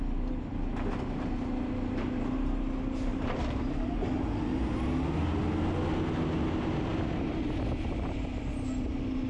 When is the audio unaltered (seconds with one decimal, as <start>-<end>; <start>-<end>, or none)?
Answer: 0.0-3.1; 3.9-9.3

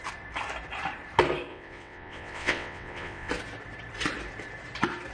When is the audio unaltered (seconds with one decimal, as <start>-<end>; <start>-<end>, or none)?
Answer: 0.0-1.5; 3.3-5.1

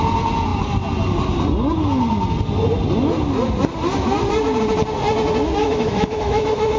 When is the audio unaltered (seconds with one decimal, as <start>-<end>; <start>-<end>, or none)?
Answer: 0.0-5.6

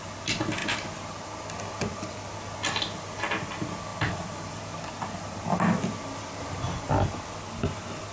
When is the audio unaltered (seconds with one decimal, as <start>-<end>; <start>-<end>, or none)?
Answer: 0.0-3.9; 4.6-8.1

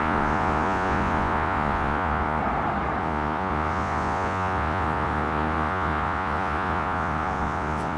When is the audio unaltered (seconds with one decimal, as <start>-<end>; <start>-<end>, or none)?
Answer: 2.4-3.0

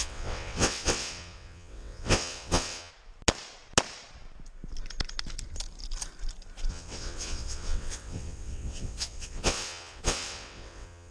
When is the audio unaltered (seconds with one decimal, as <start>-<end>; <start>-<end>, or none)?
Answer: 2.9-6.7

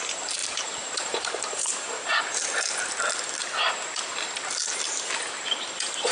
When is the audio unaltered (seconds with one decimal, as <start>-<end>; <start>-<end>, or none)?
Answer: 0.0-0.4; 2.2-6.1

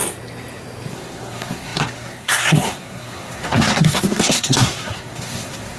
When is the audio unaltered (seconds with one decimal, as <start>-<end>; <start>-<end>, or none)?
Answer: 0.0-0.9